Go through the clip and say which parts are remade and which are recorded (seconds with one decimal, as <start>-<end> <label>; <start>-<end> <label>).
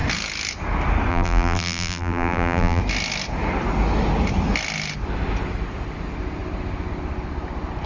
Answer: 0.0-1.1 recorded; 1.1-2.8 remade; 2.8-7.9 recorded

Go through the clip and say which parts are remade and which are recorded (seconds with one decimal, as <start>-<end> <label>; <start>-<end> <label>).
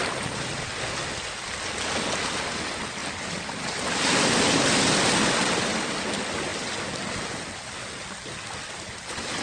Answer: 0.0-3.0 recorded; 3.0-4.3 remade; 4.3-9.4 recorded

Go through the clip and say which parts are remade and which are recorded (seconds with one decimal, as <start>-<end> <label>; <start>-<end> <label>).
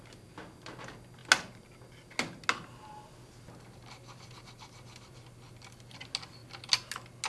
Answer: 0.0-7.3 recorded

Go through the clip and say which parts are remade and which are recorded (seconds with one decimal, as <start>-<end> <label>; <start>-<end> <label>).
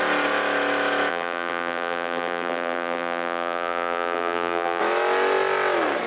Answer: 0.0-1.1 recorded; 1.1-4.8 remade; 4.8-6.1 recorded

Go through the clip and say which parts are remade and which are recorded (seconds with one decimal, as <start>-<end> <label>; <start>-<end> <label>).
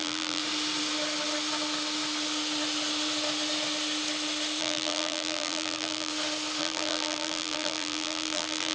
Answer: 0.0-0.4 remade; 0.4-4.6 recorded; 4.6-6.1 remade; 6.1-6.6 recorded; 6.6-8.7 remade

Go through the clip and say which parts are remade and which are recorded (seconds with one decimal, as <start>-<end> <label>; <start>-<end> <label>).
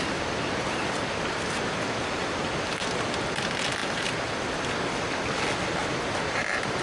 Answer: 0.0-5.8 recorded; 5.8-6.8 remade